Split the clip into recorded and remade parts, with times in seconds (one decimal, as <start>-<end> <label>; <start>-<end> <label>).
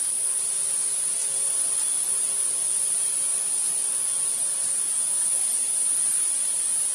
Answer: 0.0-6.9 remade